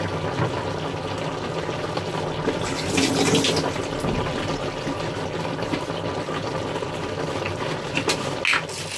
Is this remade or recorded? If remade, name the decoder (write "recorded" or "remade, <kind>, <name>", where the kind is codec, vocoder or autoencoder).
recorded